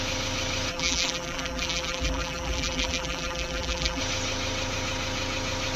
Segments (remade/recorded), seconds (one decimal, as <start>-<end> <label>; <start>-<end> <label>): 0.0-0.7 recorded; 0.7-4.0 remade; 4.0-5.8 recorded